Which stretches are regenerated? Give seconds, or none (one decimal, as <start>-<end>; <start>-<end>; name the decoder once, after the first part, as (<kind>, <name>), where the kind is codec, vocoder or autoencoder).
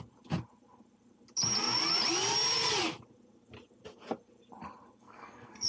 5.0-5.7 (codec, SNAC)